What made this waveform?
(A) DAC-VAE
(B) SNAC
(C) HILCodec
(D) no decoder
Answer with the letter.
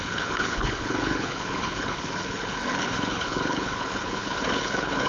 C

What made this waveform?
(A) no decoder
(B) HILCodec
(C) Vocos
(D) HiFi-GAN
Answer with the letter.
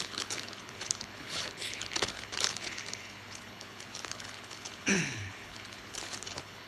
B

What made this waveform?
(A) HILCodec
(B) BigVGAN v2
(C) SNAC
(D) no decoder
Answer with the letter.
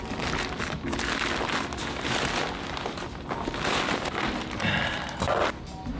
D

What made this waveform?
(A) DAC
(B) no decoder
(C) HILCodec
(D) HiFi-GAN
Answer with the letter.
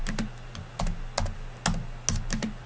B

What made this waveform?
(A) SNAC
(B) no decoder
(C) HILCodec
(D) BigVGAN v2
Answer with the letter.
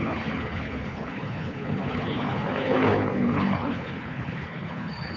C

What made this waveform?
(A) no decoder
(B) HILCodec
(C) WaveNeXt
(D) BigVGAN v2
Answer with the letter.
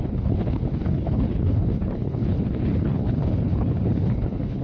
B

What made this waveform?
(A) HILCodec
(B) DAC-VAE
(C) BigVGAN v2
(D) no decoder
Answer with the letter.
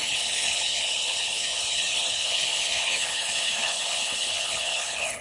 A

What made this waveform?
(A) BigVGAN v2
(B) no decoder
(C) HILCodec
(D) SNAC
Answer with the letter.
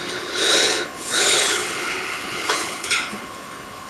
C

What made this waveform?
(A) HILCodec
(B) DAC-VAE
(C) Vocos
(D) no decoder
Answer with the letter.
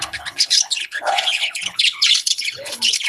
A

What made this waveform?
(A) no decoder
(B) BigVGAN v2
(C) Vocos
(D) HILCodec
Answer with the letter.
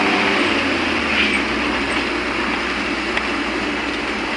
A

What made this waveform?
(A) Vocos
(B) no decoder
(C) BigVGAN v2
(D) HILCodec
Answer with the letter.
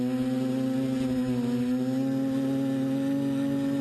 B